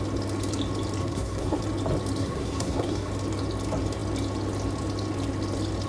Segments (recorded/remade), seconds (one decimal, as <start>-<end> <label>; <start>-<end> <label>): 0.0-1.0 recorded; 1.0-1.6 remade; 1.6-2.2 recorded; 2.2-3.1 remade; 3.1-5.9 recorded